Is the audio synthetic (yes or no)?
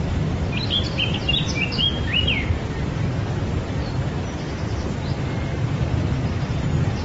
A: yes